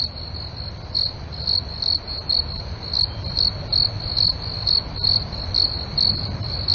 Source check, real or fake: real